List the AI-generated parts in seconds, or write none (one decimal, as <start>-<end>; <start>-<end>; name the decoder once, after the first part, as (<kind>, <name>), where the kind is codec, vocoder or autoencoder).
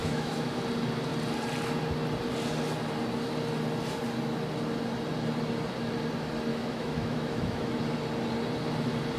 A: 0.0-0.6 (autoencoder, DAC-VAE); 6.5-7.8